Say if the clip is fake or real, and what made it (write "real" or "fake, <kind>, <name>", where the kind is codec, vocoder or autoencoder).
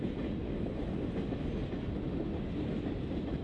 real